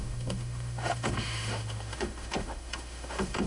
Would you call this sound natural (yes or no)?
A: no